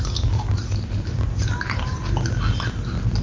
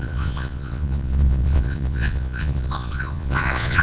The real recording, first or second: first